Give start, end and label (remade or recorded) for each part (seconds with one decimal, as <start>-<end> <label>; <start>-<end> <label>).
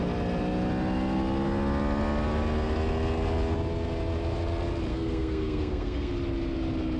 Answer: 0.0-4.9 recorded; 4.9-6.1 remade; 6.1-7.0 recorded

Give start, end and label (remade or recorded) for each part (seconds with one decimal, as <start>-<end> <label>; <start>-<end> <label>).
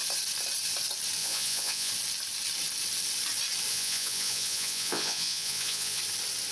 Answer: 0.0-1.2 recorded; 1.2-1.9 remade; 1.9-3.7 recorded; 3.7-6.0 remade; 6.0-6.5 recorded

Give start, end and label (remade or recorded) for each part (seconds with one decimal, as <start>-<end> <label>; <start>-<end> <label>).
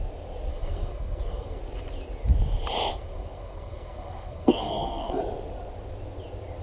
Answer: 0.0-0.5 recorded; 0.5-1.6 remade; 1.6-2.9 recorded; 2.9-5.2 remade; 5.2-6.6 recorded